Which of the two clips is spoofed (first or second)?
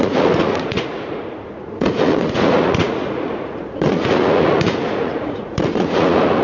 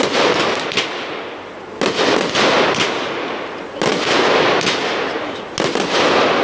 first